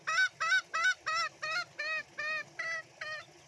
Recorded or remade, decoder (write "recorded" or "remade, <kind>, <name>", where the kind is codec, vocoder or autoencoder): recorded